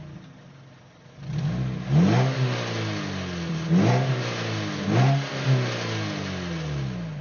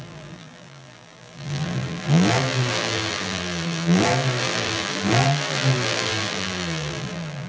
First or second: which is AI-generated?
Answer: second